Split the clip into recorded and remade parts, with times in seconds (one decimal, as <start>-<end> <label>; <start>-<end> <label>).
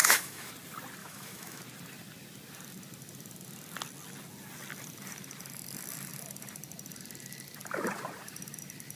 0.0-0.5 remade; 0.5-1.0 recorded; 1.0-1.6 remade; 1.6-9.0 recorded